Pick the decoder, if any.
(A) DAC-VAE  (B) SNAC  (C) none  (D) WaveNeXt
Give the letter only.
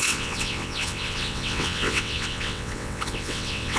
D